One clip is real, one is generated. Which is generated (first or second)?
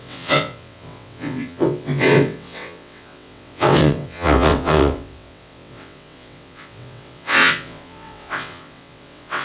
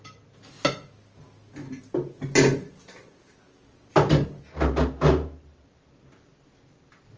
first